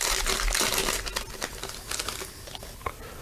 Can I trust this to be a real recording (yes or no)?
yes